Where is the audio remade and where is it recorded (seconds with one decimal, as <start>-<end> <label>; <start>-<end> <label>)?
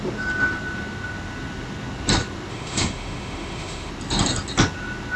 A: 0.0-2.5 recorded; 2.5-3.9 remade; 3.9-5.2 recorded